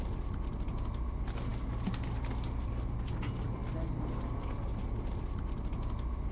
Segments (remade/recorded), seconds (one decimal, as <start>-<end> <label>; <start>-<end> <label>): 0.0-6.3 recorded